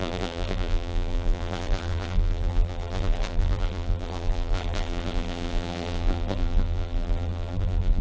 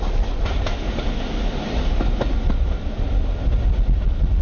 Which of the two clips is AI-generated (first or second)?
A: first